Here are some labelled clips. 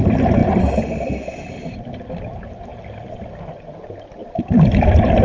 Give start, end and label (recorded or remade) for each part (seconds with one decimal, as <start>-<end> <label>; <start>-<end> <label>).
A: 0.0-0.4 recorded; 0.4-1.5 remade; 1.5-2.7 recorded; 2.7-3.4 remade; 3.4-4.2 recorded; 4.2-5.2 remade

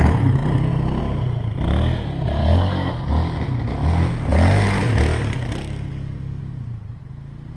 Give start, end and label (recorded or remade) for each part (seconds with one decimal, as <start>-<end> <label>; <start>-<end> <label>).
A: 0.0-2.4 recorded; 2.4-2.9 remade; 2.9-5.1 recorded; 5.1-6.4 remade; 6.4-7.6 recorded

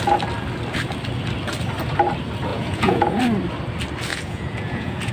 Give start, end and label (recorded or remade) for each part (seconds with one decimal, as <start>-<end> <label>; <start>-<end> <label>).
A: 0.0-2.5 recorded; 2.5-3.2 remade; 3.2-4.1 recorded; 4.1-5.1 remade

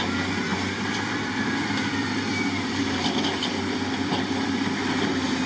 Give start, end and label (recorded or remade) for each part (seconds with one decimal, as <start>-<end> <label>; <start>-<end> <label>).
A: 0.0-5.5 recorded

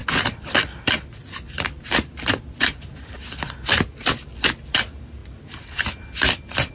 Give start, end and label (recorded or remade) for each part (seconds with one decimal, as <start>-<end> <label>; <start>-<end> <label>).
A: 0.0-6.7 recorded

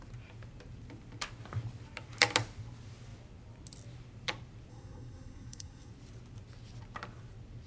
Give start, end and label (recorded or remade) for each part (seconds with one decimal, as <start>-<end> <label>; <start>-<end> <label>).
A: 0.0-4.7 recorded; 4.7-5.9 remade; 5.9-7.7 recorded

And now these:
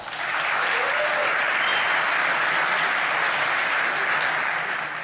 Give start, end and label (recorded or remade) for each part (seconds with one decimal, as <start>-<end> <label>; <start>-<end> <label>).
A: 0.0-5.0 recorded

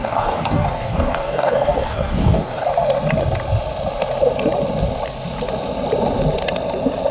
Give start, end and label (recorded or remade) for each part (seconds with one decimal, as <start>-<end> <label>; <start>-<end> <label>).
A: 0.0-2.7 remade; 2.7-7.1 recorded